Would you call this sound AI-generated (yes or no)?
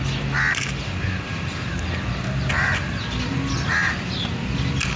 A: no